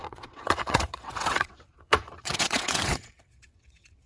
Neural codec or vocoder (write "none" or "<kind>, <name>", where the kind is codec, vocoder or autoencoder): vocoder, WaveNeXt